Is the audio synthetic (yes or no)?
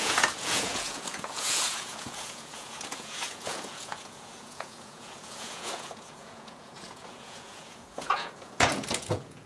yes